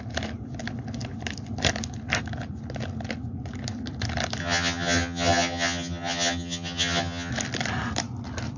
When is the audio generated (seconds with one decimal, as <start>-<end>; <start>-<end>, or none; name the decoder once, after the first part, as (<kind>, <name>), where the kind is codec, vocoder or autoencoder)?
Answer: 4.4-7.3 (vocoder, HiFi-GAN)